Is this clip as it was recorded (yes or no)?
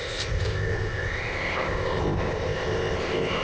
no